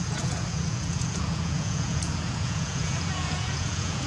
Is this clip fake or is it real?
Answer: fake